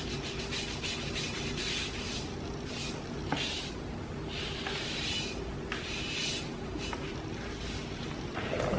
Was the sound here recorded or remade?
recorded